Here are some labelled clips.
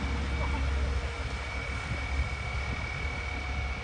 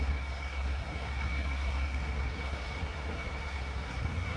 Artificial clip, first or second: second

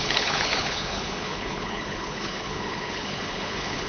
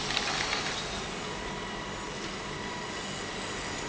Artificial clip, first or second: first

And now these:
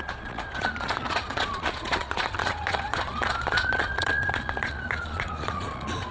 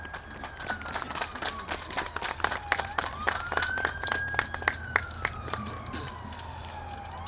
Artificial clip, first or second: first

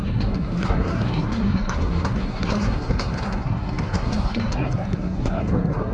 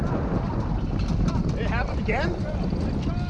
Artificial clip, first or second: first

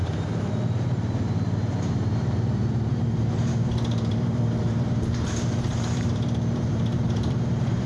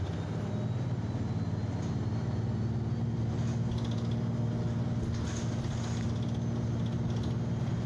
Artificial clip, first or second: first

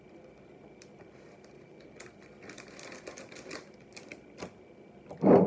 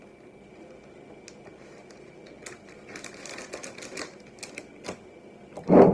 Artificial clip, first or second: first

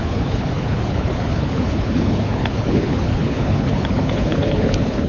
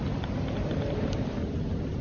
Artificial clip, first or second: first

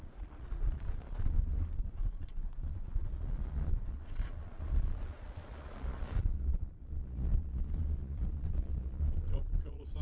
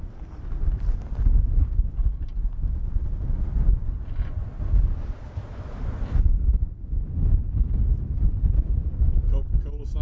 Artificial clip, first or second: first